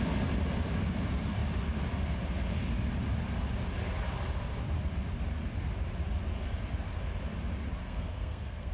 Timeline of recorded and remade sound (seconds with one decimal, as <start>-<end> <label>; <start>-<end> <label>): 0.0-7.8 recorded; 7.8-8.7 remade